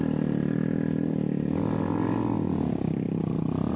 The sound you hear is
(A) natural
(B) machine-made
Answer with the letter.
A